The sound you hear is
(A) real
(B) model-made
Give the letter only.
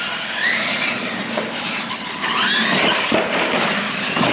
A